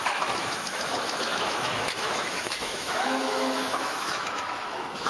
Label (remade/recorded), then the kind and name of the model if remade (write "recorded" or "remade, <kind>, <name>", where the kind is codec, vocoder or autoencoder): remade, autoencoder, DAC-VAE